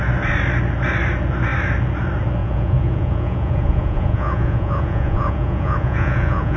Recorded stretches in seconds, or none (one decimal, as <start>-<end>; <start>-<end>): 0.0-2.4